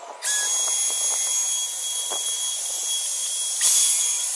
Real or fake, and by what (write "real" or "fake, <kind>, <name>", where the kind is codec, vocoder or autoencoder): real